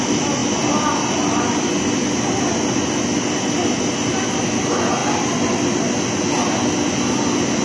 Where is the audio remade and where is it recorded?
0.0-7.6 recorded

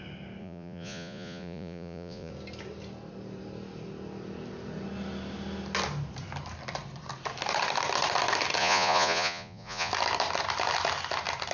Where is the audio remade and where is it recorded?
0.0-0.4 recorded; 0.4-2.3 remade; 2.3-8.6 recorded; 8.6-9.9 remade; 9.9-11.5 recorded

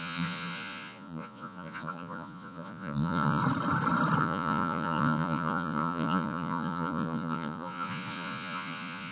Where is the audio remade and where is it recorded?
0.0-3.4 remade; 3.4-4.2 recorded; 4.2-9.1 remade

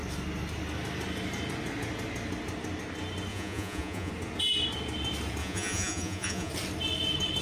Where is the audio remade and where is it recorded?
0.0-3.3 recorded; 3.3-4.1 remade; 4.1-5.4 recorded; 5.4-6.5 remade; 6.5-7.4 recorded